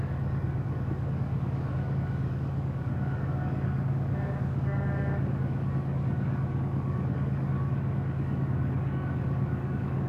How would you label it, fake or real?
fake